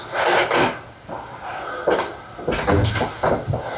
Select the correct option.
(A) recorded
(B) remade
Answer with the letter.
A